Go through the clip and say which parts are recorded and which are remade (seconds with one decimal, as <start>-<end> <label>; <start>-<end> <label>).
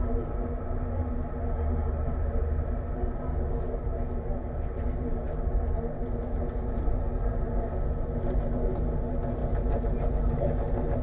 0.0-11.0 recorded